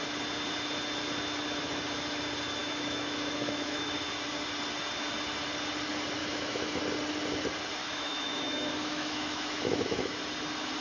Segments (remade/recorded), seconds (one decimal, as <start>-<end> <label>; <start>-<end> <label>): 0.0-2.6 recorded; 2.6-4.0 remade; 4.0-6.2 recorded; 6.2-6.8 remade; 6.8-7.8 recorded; 7.8-10.2 remade; 10.2-10.8 recorded